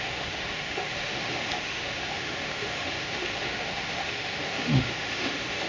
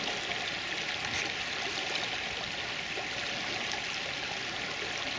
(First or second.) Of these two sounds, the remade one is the first